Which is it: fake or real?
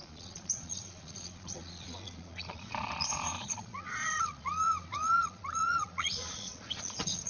fake